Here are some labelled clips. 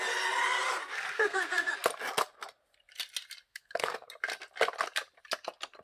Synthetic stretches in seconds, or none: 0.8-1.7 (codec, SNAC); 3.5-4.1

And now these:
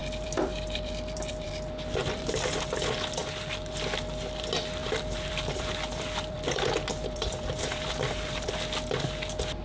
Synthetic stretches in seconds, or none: 0.0-1.5 (vocoder, BigVGAN v2); 2.0-2.8; 4.8-8.5

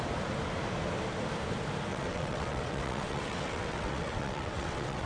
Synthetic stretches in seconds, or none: 1.9-5.1 (vocoder, WaveNeXt)

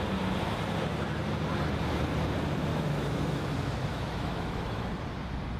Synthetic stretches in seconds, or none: 2.7-3.4 (autoencoder, DAC-VAE); 3.9-4.9

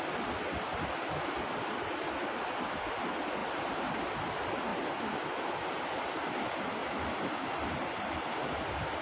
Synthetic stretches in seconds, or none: none